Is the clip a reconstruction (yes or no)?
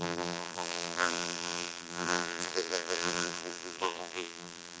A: yes